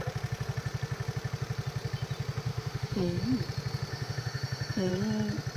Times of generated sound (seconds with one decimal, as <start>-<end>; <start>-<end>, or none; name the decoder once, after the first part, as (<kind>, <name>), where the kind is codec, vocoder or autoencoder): 2.5-3.2 (autoencoder, DAC-VAE); 3.9-4.9